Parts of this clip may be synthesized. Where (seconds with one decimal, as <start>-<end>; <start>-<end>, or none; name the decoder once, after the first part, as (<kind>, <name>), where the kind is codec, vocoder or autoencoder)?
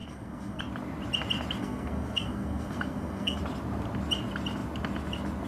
0.0-0.6 (codec, SNAC); 1.6-3.4